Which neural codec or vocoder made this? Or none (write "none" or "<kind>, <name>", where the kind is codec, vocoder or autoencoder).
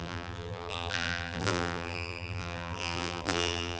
vocoder, BigVGAN v2